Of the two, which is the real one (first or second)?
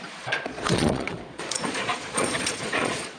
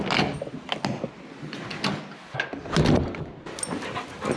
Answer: second